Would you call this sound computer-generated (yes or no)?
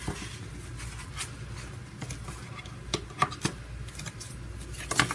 no